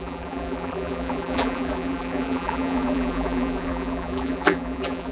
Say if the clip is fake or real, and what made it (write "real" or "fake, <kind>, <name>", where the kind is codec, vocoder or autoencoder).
fake, vocoder, BigVGAN v2